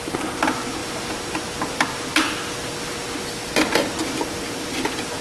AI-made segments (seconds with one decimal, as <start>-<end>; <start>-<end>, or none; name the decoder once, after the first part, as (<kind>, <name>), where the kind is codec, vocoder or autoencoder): none